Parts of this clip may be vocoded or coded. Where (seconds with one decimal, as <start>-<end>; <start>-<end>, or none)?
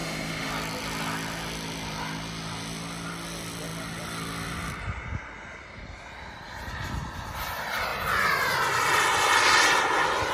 0.0-0.5